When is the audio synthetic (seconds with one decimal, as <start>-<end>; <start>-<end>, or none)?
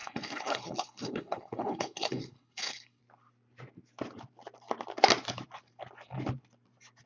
0.0-3.0